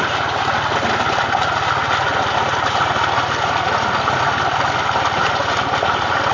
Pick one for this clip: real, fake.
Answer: real